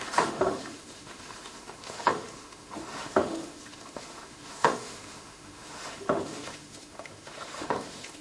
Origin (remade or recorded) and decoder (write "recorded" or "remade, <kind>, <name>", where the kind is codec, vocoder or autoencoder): remade, autoencoder, DAC-VAE